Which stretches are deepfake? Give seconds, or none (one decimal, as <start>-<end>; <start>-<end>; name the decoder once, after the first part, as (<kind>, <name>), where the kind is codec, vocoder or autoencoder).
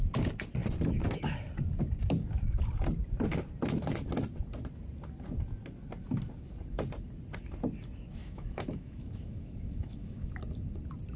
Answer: 8.2-10.3 (autoencoder, DAC-VAE)